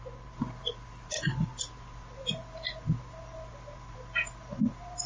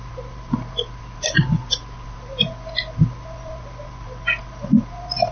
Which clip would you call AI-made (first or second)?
second